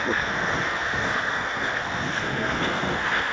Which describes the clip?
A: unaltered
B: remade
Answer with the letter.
B